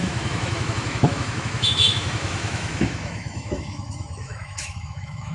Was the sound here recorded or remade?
remade